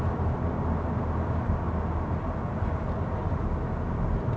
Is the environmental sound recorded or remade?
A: recorded